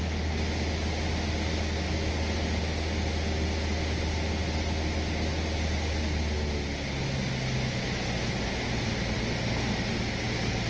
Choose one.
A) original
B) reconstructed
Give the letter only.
A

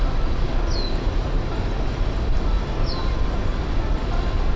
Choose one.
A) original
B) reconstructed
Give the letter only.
A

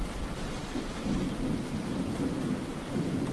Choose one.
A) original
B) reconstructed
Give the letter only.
A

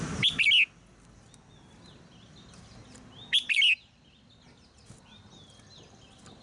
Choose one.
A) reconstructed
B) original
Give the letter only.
B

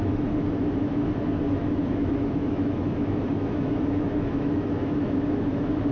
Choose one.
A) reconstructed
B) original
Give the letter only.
A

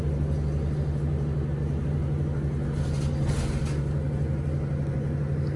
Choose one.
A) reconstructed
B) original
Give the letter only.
B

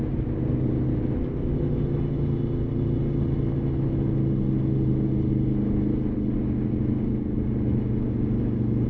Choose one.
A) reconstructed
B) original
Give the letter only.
B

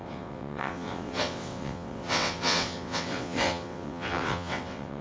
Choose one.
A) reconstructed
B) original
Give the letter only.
A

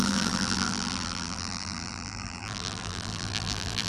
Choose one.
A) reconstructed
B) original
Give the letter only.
A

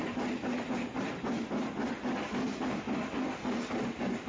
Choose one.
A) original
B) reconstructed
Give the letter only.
A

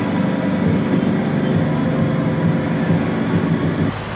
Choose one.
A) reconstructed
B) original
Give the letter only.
B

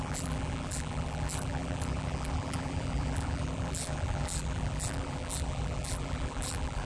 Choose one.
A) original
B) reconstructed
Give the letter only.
B